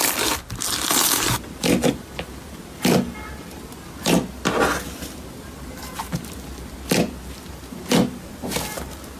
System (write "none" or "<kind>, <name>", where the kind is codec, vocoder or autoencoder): none